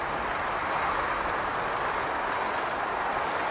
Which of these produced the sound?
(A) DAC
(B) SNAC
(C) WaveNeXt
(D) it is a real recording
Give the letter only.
D